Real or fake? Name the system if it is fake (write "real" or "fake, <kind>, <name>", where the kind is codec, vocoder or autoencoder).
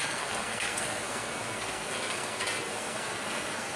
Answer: fake, codec, SNAC